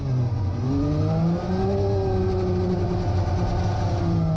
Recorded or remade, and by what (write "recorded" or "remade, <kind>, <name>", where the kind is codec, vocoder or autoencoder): recorded